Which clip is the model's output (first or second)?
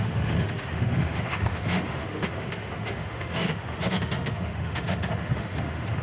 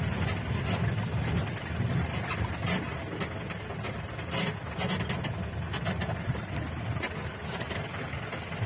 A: first